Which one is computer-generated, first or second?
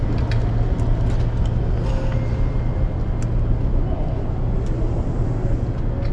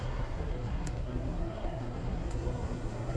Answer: second